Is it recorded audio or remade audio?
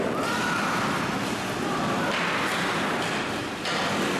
recorded